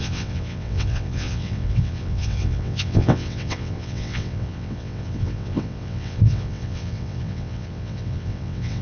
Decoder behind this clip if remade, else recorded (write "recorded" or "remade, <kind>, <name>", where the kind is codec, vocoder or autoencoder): remade, vocoder, WaveNeXt